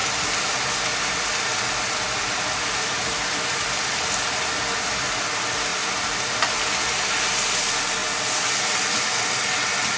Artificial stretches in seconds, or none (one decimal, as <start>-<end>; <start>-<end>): 0.0-4.7; 5.7-7.1